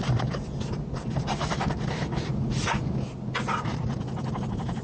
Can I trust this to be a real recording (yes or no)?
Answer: yes